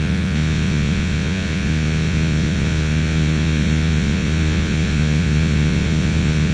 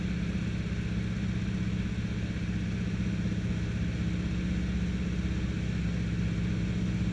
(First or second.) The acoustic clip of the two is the second